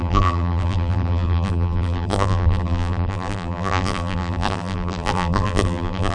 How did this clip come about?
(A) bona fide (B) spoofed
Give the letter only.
B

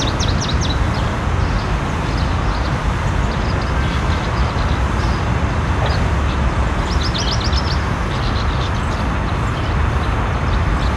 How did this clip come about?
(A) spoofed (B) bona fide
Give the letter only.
B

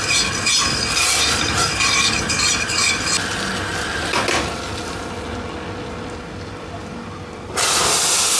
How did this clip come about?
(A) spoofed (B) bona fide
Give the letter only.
B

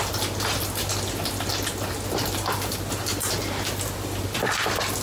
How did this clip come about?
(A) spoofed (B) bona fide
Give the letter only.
B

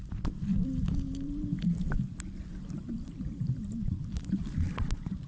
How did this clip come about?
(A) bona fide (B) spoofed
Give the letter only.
B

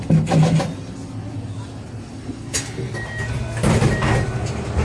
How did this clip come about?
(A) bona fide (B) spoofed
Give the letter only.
A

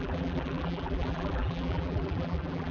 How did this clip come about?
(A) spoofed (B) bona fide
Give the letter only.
A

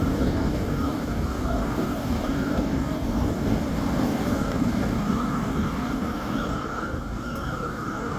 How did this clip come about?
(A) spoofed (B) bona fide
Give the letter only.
A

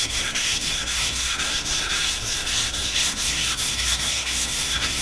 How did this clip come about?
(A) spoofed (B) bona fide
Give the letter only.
A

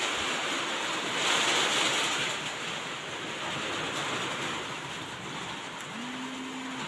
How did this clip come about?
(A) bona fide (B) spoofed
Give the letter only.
A